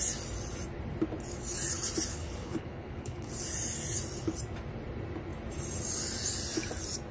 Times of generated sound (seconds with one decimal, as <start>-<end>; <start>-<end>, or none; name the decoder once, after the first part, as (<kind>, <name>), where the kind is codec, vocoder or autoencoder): 2.1-3.3 (codec, HILCodec)